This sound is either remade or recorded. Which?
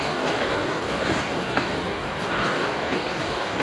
remade